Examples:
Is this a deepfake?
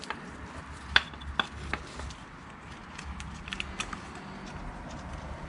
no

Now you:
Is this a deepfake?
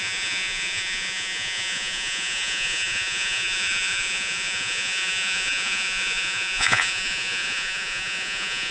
yes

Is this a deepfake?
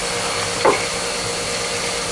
no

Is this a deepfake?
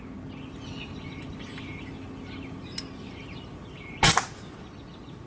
no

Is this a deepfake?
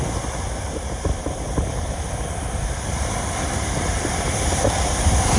no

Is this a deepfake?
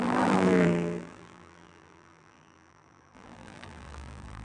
yes